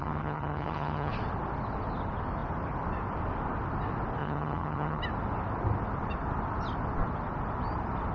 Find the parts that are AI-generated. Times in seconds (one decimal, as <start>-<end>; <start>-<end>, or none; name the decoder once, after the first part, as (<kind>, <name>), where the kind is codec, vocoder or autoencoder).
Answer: 0.0-1.1 (vocoder, HiFi-GAN); 4.2-5.0